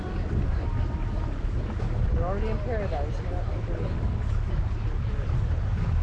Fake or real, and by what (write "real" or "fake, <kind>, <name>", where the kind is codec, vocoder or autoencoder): real